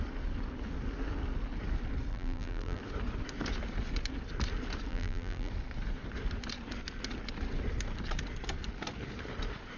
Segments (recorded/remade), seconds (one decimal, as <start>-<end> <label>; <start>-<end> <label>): 0.0-2.1 recorded; 2.1-2.8 remade; 2.8-4.9 recorded; 4.9-5.5 remade; 5.5-9.8 recorded